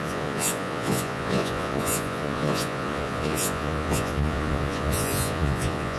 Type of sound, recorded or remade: remade